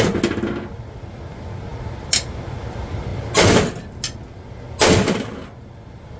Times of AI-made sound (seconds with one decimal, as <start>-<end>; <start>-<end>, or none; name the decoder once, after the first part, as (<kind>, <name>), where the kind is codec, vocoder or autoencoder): none